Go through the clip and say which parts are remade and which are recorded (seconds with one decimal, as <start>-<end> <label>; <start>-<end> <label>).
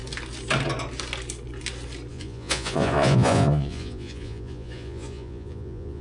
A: 0.0-2.1 recorded; 2.1-6.0 remade